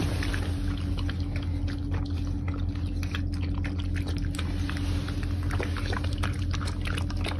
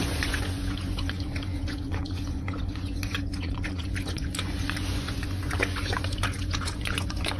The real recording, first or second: first